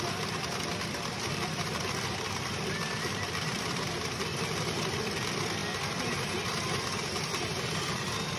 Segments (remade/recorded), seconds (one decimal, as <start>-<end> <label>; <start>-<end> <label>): 0.0-5.6 remade; 5.6-7.4 recorded; 7.4-8.4 remade